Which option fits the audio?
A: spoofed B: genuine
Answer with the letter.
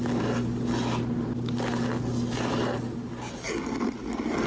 B